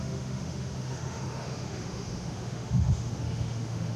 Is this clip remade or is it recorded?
remade